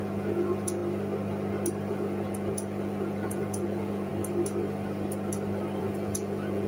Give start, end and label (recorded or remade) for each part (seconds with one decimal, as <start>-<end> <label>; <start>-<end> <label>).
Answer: 0.0-0.8 remade; 0.8-1.9 recorded; 1.9-4.1 remade; 4.1-5.8 recorded; 5.8-6.7 remade